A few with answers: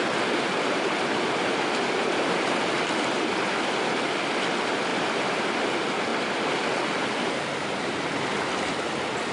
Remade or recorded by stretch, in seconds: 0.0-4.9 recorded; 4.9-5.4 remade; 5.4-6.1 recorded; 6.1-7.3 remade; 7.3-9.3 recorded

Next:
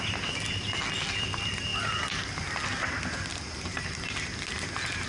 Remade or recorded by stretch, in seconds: 0.0-5.1 recorded

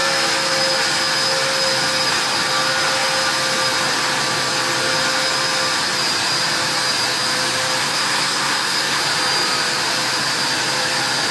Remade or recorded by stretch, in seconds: 0.0-7.8 recorded; 7.8-9.0 remade; 9.0-11.3 recorded

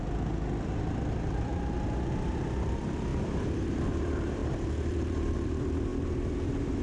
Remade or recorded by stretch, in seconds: 0.0-1.5 remade; 1.5-2.1 recorded; 2.1-5.9 remade; 5.9-6.8 recorded